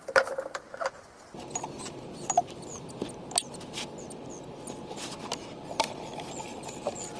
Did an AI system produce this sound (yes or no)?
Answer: no